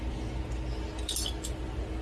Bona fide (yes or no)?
yes